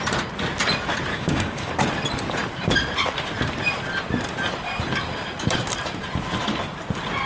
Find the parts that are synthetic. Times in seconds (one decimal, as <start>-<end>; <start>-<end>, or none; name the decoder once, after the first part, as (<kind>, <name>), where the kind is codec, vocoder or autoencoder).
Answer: 1.1-1.7 (codec, DAC)